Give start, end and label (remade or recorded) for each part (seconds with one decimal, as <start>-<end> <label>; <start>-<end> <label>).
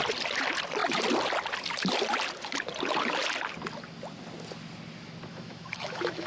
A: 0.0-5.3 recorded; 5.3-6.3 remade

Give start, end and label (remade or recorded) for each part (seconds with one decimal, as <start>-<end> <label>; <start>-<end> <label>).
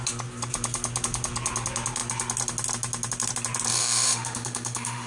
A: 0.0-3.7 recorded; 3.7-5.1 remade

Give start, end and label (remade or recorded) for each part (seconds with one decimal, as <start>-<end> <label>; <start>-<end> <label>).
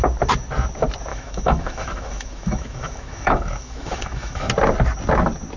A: 0.0-1.1 recorded; 1.1-4.5 remade; 4.5-5.6 recorded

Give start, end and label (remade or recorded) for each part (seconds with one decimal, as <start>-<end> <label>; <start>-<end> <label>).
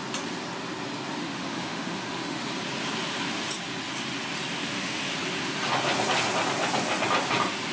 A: 0.0-1.2 recorded; 1.2-2.4 remade; 2.4-4.5 recorded; 4.5-5.1 remade; 5.1-7.7 recorded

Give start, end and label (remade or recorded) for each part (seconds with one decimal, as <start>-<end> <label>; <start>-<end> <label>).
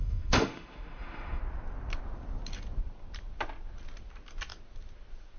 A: 0.0-1.4 remade; 1.4-5.4 recorded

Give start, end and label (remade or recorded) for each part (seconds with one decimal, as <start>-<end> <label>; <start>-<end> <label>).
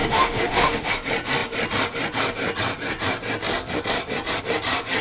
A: 0.0-0.9 remade; 0.9-5.0 recorded